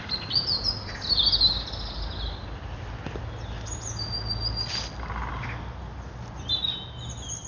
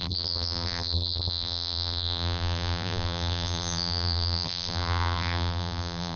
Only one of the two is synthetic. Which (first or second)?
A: second